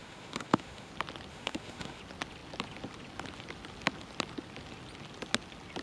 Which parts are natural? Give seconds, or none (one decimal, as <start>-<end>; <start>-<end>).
0.9-1.3; 2.0-5.8